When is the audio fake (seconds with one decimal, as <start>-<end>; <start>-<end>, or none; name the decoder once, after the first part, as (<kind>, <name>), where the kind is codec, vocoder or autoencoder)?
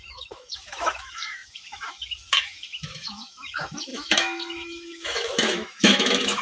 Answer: 0.0-6.4 (autoencoder, DAC-VAE)